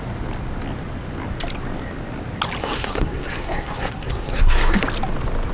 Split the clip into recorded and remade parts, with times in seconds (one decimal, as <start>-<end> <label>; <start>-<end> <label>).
0.0-2.6 recorded; 2.6-4.8 remade; 4.8-5.5 recorded